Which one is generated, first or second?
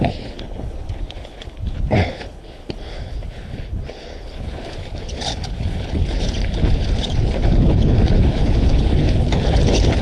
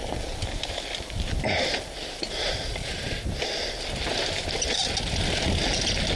first